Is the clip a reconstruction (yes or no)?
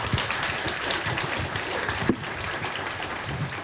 yes